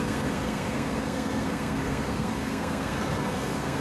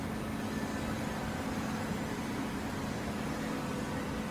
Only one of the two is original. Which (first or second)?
second